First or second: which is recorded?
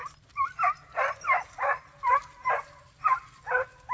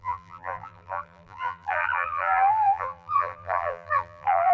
first